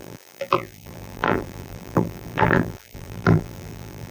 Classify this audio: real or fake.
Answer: fake